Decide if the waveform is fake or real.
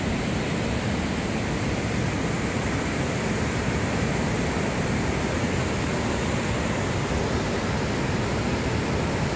real